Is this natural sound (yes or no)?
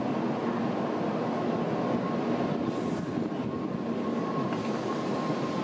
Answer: yes